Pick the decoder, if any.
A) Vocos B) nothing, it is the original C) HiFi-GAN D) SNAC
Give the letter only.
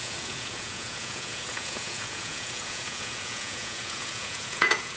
A